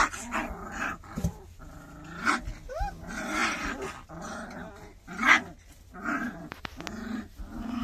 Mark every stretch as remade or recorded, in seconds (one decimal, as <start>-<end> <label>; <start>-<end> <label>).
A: 0.0-6.2 recorded; 6.2-6.8 remade; 6.8-7.8 recorded